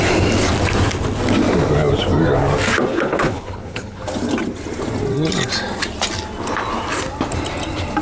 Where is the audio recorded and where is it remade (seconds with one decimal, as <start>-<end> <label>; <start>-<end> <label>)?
0.0-2.9 recorded; 2.9-4.0 remade; 4.0-8.0 recorded